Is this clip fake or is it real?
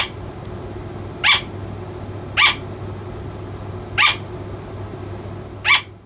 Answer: real